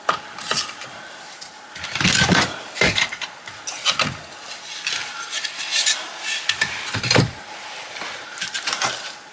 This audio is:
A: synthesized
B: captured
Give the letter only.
B